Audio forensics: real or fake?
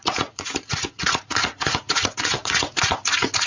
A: fake